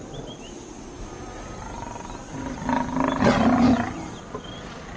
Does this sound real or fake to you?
real